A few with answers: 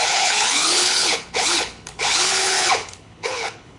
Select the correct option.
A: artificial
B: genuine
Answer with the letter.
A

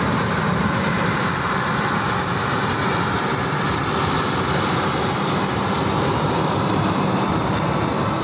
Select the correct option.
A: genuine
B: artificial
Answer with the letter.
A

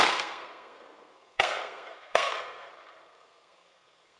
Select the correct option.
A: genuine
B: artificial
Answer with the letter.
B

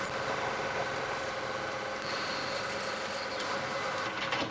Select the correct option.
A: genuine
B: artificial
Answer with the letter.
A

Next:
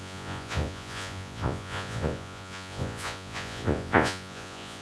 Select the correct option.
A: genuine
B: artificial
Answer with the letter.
B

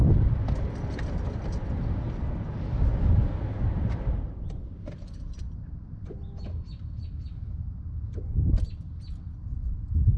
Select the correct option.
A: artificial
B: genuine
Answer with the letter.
B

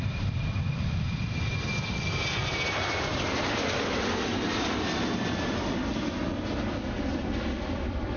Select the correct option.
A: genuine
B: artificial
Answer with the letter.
A